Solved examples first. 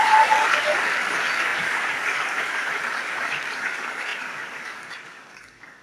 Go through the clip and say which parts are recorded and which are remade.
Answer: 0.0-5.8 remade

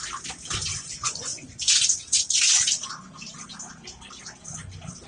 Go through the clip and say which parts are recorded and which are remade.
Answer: 0.0-0.6 recorded; 0.6-2.2 remade; 2.2-5.1 recorded

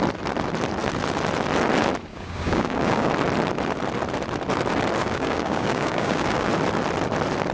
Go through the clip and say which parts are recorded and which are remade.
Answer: 0.0-2.1 recorded; 2.1-3.1 remade; 3.1-5.0 recorded; 5.0-6.5 remade; 6.5-7.5 recorded

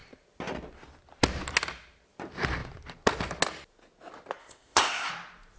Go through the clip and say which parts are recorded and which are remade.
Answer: 0.0-4.4 recorded; 4.4-5.1 remade; 5.1-5.6 recorded

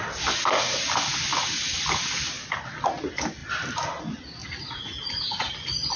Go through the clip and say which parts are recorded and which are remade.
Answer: 0.0-4.4 recorded; 4.4-5.5 remade; 5.5-6.0 recorded

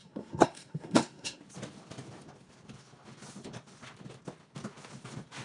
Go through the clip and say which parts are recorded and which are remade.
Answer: 0.0-1.4 remade; 1.4-5.4 recorded

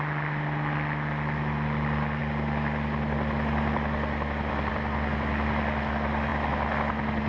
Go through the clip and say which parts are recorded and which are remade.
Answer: 0.0-7.3 recorded